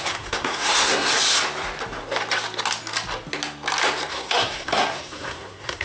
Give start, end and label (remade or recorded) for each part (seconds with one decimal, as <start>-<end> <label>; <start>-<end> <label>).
0.0-1.1 remade; 1.1-4.1 recorded; 4.1-5.8 remade